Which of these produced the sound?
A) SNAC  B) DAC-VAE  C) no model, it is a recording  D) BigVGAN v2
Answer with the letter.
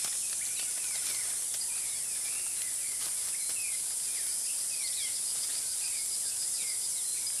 C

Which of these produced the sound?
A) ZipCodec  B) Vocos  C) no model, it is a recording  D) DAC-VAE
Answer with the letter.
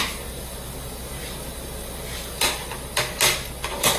C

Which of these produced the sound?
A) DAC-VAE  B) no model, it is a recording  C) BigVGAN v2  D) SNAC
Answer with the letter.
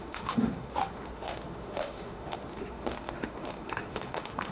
A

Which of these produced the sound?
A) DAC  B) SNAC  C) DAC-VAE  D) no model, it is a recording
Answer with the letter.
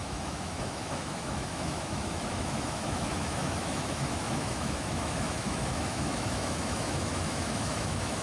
C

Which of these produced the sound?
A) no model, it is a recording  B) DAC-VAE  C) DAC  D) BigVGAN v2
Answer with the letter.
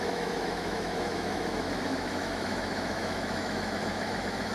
B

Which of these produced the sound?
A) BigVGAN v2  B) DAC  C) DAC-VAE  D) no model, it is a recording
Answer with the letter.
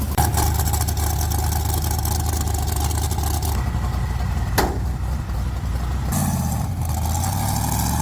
D